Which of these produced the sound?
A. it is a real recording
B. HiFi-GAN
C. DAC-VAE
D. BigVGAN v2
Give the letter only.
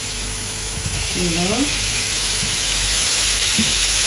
C